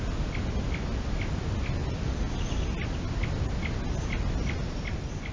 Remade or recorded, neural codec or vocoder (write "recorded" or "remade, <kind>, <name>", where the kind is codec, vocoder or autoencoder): recorded